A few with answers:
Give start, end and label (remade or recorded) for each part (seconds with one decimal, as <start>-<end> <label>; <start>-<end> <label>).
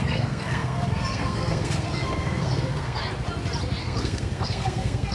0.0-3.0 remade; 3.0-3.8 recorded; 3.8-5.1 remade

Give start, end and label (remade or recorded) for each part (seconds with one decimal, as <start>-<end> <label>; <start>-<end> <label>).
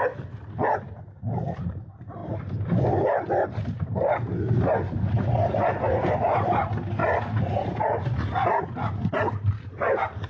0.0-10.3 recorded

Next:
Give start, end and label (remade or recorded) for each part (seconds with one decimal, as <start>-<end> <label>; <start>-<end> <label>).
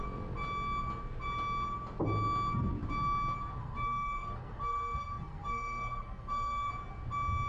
0.0-3.5 recorded; 3.5-6.7 remade; 6.7-7.5 recorded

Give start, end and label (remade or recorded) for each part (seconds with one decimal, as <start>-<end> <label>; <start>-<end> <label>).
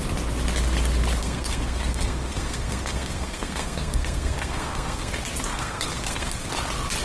0.0-1.2 recorded; 1.2-5.1 remade; 5.1-5.5 recorded; 5.5-6.5 remade; 6.5-7.0 recorded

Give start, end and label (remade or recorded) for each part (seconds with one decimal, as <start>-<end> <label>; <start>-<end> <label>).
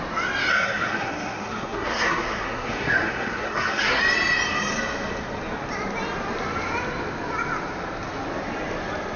0.0-0.5 recorded; 0.5-4.0 remade; 4.0-9.2 recorded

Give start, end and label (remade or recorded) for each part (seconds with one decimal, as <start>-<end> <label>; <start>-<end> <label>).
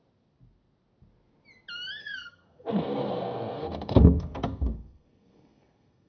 0.0-2.0 recorded; 2.0-6.1 remade